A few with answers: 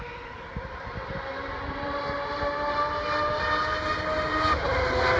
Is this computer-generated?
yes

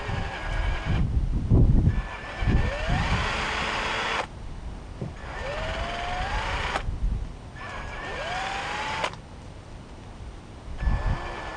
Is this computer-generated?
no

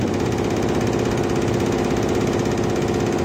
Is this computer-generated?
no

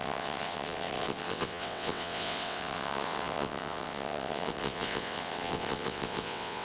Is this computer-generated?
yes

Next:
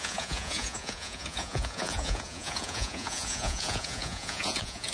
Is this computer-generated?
yes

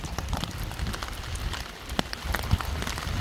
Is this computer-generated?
no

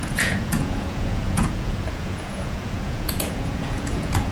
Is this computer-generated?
yes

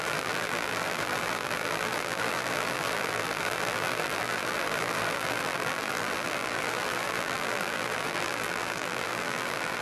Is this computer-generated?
yes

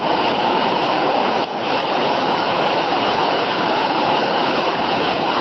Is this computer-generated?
yes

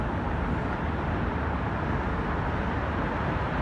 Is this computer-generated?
no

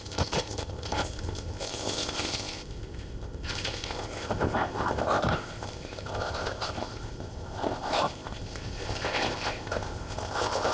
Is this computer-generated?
yes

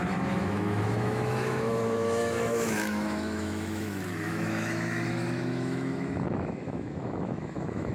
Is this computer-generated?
yes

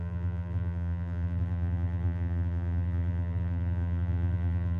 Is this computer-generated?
yes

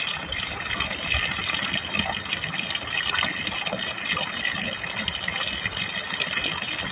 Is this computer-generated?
no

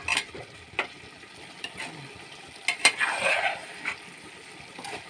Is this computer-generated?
no